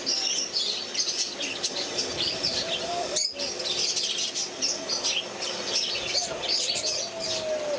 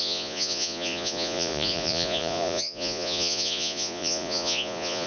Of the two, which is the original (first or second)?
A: first